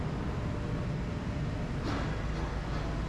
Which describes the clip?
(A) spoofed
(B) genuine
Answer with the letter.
B